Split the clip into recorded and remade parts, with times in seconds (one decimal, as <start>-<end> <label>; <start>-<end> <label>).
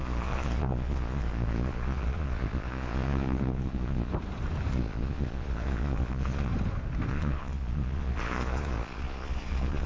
0.0-4.1 remade; 4.1-4.7 recorded; 4.7-6.5 remade; 6.5-7.1 recorded; 7.1-9.9 remade